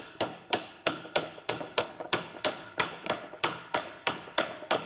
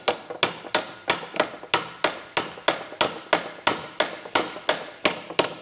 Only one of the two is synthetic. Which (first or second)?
first